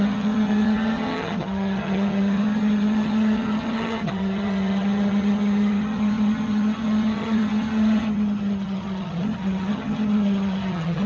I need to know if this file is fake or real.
fake